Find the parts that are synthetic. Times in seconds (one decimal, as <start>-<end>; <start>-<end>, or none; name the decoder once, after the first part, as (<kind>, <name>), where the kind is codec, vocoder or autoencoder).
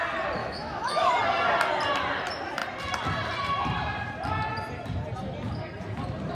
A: 0.4-1.1 (autoencoder, DAC-VAE)